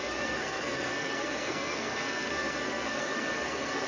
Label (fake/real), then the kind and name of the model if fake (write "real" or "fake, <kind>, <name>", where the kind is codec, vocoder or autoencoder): fake, codec, SNAC